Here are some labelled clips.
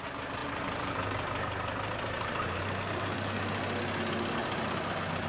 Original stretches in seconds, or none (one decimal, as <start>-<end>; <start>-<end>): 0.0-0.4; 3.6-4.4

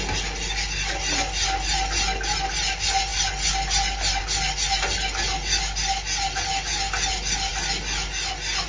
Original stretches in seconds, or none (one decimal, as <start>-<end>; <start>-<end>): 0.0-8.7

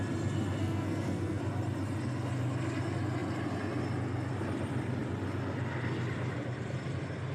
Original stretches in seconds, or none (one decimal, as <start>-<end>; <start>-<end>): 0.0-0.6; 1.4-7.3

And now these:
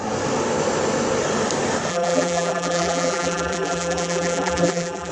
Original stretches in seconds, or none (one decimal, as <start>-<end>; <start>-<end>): 0.0-1.9

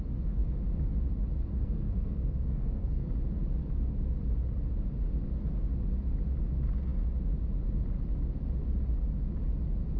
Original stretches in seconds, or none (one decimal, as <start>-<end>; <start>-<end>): 0.0-1.5; 3.1-10.0